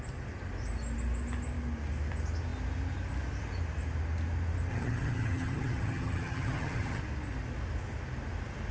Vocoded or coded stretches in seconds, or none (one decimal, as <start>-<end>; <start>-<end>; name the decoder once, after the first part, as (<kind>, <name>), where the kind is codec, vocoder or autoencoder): 4.7-7.0 (vocoder, HiFi-GAN)